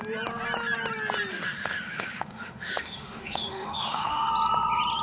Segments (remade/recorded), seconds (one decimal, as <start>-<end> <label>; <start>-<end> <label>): 0.0-1.3 recorded; 1.3-4.3 remade; 4.3-5.0 recorded

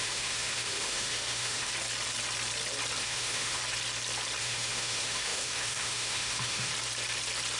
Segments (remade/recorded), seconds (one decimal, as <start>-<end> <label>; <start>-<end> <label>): 0.0-1.7 remade; 1.7-3.0 recorded; 3.0-3.6 remade; 3.6-4.4 recorded; 4.4-6.7 remade; 6.7-7.6 recorded

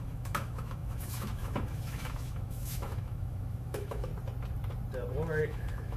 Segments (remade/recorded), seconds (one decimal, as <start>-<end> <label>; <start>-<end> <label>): 0.0-4.1 remade; 4.1-5.4 recorded; 5.4-6.0 remade

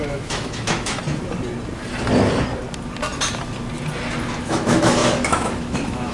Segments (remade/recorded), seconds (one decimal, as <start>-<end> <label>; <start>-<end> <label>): 0.0-1.0 remade; 1.0-4.4 recorded; 4.4-6.1 remade

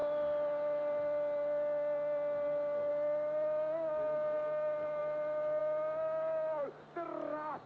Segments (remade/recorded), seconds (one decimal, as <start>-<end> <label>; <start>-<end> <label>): 0.0-7.7 recorded

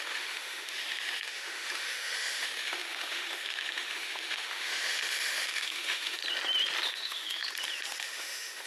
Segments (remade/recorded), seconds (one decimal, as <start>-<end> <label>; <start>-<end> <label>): 0.0-6.2 remade; 6.2-6.9 recorded; 6.9-7.4 remade; 7.4-8.0 recorded; 8.0-8.7 remade

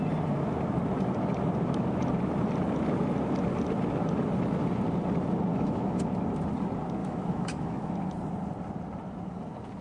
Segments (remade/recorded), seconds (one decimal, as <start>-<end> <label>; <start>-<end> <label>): 0.0-5.5 recorded; 5.5-6.0 remade; 6.0-7.0 recorded; 7.0-7.9 remade; 7.9-9.8 recorded